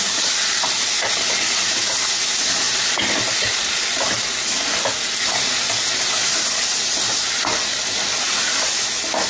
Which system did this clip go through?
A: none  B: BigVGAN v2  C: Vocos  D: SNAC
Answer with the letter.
A